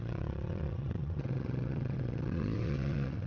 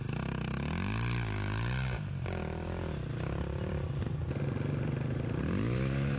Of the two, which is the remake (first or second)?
first